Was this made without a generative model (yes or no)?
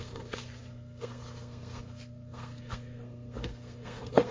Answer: no